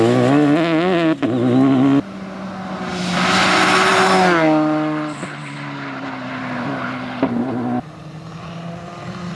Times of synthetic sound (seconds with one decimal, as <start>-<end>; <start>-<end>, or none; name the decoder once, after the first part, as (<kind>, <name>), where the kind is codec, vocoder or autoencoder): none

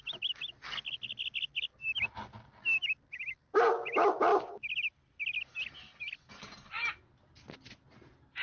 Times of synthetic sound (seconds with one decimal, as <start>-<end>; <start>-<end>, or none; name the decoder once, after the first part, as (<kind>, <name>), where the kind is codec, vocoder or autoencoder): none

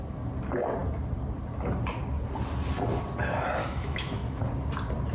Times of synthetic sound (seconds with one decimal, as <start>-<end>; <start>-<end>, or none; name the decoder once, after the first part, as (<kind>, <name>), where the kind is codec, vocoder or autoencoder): 3.6-4.4 (autoencoder, DAC-VAE)

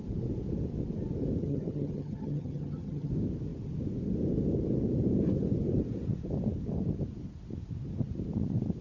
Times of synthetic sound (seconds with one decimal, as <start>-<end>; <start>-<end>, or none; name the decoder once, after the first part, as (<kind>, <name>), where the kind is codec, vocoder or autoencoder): 1.4-3.1 (vocoder, HiFi-GAN)

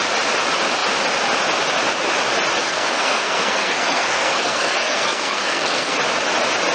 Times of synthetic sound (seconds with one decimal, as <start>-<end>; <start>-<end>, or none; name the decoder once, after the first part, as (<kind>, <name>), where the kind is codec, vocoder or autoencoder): 2.6-6.0 (codec, SNAC)

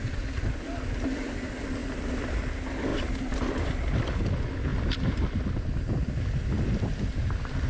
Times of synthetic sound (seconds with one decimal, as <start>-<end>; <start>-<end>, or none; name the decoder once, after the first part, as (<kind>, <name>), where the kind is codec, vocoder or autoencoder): none

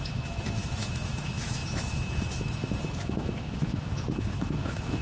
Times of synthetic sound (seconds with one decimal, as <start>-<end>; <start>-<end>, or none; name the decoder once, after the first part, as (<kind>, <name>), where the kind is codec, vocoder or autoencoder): 0.0-5.0 (autoencoder, DAC-VAE)